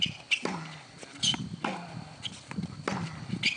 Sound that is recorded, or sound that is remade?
recorded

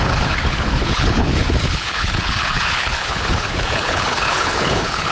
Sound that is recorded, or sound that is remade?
remade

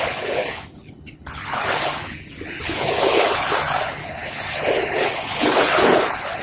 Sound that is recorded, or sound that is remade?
remade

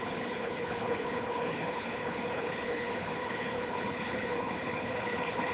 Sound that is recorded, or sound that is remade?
remade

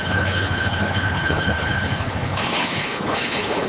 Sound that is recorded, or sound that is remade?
remade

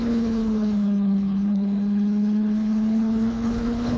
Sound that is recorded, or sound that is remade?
remade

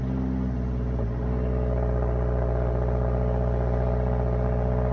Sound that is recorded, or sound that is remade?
recorded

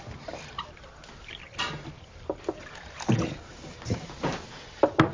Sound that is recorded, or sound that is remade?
recorded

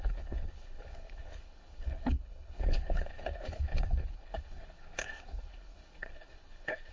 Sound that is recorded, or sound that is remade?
remade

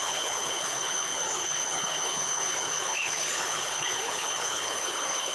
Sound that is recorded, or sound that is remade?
remade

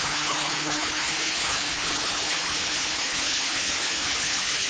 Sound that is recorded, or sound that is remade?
remade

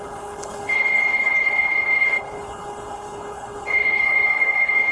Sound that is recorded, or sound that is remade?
remade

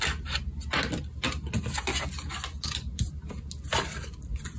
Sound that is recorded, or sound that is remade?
recorded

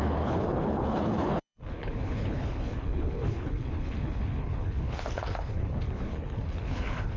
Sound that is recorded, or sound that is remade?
remade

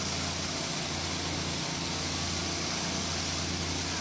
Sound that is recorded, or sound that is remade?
recorded